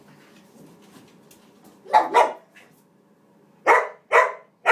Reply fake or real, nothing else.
real